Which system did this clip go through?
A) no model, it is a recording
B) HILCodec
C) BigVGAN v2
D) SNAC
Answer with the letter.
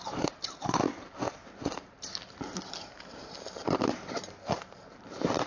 C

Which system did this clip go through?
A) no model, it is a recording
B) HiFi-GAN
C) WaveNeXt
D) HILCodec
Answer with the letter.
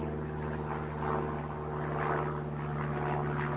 A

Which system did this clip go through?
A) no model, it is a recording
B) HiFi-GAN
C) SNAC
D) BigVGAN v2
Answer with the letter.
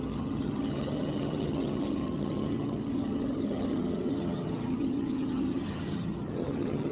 B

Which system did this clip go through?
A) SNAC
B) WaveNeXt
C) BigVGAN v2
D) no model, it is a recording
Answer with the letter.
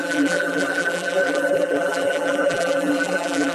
C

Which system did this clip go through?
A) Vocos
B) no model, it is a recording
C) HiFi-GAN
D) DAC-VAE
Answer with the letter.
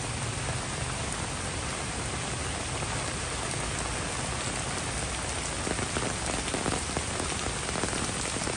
B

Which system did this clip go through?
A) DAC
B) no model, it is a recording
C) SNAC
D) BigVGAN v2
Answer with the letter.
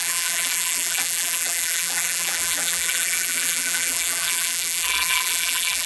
D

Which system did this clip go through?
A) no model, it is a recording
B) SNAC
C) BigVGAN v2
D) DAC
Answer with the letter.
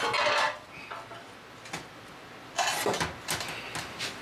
A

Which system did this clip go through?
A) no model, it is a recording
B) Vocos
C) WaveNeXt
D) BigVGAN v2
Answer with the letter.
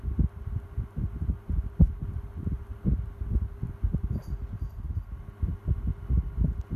A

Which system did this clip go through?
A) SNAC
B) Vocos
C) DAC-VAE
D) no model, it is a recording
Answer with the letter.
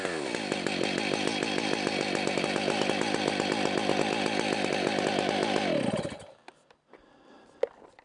D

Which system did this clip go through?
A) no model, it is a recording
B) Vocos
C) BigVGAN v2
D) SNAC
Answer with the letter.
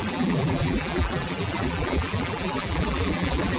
C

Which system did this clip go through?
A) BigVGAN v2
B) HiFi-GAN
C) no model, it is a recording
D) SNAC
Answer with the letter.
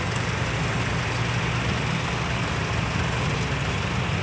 C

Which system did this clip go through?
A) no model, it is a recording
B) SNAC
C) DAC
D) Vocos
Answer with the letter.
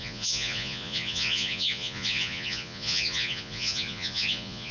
D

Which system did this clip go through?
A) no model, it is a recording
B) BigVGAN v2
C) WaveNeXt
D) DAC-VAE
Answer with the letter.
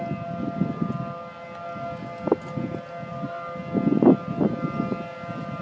A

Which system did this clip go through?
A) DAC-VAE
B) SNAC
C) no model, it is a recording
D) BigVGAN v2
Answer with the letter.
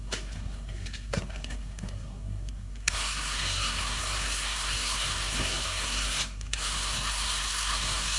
B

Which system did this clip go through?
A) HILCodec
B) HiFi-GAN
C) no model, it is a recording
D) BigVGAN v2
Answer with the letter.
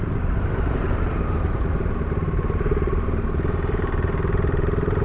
D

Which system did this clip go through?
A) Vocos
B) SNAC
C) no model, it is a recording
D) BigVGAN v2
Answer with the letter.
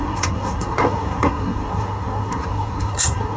B